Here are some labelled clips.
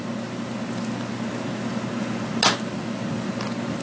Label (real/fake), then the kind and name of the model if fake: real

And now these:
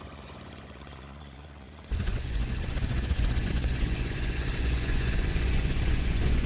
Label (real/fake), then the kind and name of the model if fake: fake, vocoder, Vocos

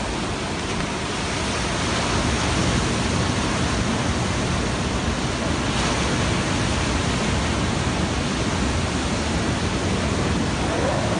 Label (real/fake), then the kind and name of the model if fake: real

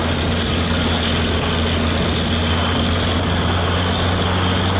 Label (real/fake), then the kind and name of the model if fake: real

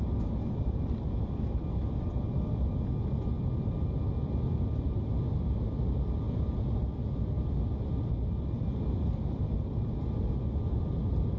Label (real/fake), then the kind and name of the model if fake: real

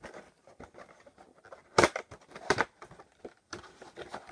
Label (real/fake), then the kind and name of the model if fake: real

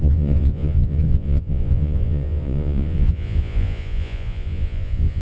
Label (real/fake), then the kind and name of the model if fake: fake, vocoder, Vocos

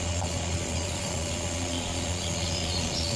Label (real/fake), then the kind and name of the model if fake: fake, vocoder, Vocos